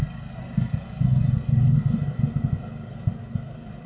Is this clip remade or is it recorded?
recorded